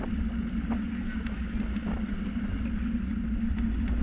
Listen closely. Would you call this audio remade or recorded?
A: recorded